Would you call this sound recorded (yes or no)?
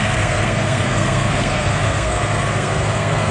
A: no